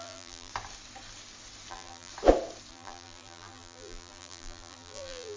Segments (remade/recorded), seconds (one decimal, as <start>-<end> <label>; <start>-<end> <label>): 0.0-0.5 remade; 0.5-1.7 recorded; 1.7-2.1 remade; 2.1-2.7 recorded; 2.7-5.4 remade

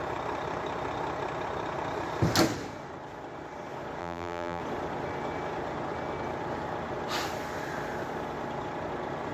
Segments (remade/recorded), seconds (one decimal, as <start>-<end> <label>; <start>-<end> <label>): 0.0-4.0 recorded; 4.0-4.6 remade; 4.6-9.3 recorded